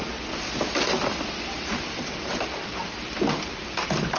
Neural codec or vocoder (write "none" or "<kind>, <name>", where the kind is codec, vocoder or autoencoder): none